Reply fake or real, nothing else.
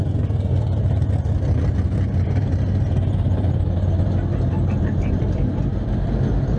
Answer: real